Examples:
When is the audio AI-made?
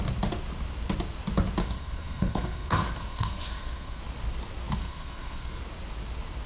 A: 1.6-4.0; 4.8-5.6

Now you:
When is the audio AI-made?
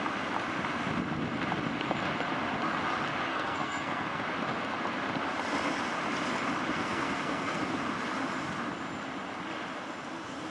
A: 3.3-4.2; 6.7-7.6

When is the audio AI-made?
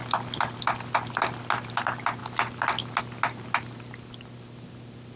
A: none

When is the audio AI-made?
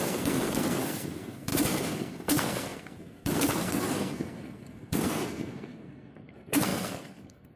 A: 0.0-7.6